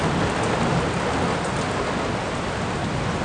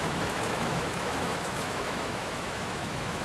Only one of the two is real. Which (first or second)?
first